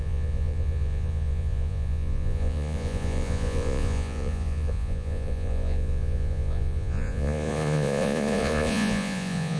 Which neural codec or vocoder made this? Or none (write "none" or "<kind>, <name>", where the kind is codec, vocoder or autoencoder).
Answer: vocoder, Vocos